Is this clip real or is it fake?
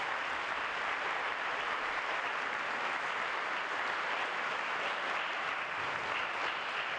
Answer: real